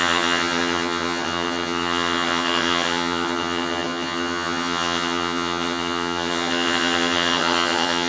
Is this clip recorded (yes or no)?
no